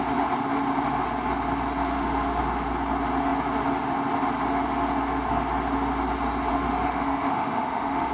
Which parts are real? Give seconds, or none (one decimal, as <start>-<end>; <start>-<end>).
0.0-1.9; 2.7-6.5